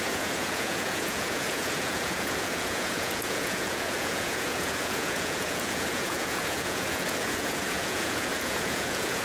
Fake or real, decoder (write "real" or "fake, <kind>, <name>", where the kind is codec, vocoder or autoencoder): fake, vocoder, Vocos